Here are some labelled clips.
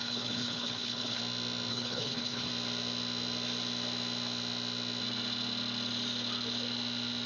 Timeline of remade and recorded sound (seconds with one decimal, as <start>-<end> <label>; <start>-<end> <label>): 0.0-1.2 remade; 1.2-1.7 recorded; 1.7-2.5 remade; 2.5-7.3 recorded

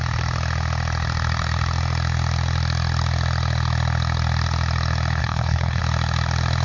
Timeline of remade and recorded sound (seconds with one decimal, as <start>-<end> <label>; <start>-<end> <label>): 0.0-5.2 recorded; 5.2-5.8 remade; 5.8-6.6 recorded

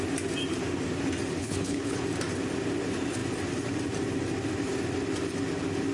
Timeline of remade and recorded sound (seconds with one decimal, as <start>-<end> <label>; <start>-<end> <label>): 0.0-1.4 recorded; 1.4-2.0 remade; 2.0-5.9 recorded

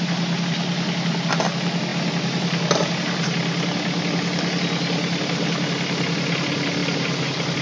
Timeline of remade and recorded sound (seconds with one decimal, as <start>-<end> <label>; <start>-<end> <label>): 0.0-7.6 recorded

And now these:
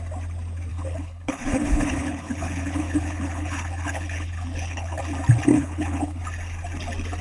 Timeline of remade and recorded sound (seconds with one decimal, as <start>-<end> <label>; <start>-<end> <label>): 0.0-0.7 recorded; 0.7-5.0 remade; 5.0-5.5 recorded; 5.5-6.2 remade; 6.2-7.2 recorded

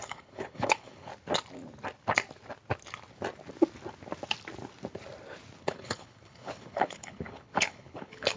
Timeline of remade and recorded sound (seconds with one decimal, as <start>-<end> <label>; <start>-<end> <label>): 0.0-1.1 remade; 1.1-5.6 recorded; 5.6-8.4 remade

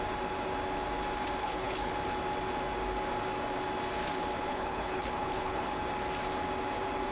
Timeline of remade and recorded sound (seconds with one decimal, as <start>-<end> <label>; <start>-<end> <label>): 0.0-1.4 recorded; 1.4-1.9 remade; 1.9-4.5 recorded; 4.5-5.8 remade; 5.8-7.1 recorded

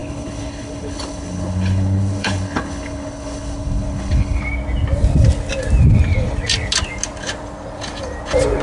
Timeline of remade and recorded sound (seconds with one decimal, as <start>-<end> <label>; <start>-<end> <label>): 0.0-4.4 remade; 4.4-8.6 recorded